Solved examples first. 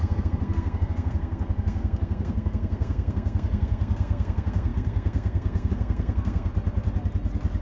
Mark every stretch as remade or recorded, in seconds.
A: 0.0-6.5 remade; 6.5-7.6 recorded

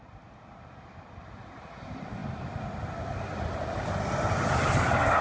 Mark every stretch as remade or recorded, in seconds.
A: 0.0-5.2 recorded

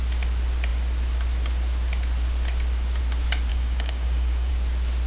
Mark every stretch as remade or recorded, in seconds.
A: 0.0-3.5 recorded; 3.5-4.5 remade; 4.5-5.1 recorded